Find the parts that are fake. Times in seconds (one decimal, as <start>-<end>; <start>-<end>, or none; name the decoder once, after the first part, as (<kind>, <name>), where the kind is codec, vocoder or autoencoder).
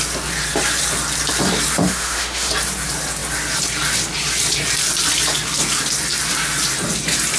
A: 1.8-2.5 (autoencoder, DAC-VAE)